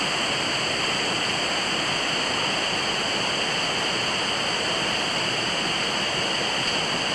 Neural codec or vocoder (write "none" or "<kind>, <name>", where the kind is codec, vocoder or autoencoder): none